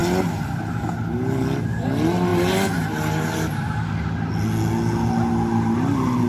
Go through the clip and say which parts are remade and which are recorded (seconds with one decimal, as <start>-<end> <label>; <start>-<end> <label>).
0.0-6.3 recorded